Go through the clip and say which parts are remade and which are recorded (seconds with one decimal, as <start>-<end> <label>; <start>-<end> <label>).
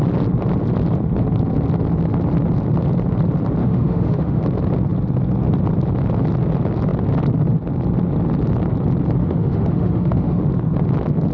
0.0-3.6 recorded; 3.6-4.4 remade; 4.4-9.2 recorded; 9.2-10.4 remade; 10.4-11.3 recorded